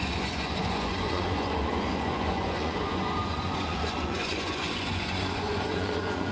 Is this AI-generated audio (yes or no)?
yes